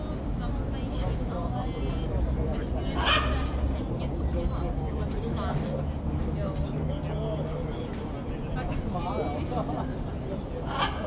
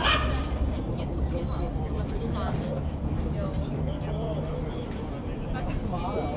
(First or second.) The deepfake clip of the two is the second